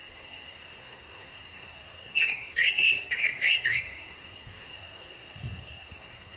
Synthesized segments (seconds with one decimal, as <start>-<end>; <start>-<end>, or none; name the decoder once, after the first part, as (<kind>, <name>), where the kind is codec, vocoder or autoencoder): 0.0-6.4 (codec, SNAC)